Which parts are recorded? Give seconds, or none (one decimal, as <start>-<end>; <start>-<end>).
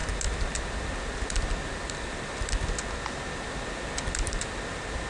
0.0-5.1